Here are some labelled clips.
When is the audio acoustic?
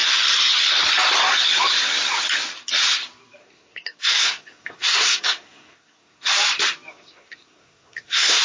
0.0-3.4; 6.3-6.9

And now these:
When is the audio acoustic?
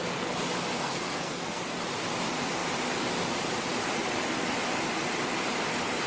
0.0-0.7; 1.6-6.1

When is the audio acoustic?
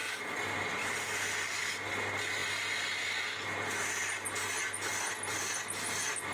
0.0-6.3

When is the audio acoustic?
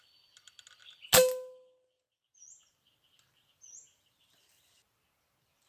0.0-5.7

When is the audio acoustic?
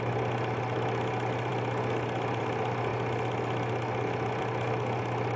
0.0-5.4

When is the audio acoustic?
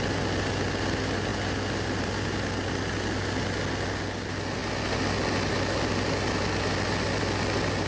0.0-7.9